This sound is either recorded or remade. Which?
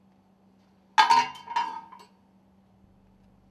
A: recorded